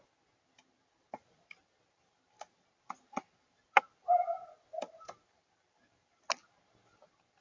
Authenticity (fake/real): real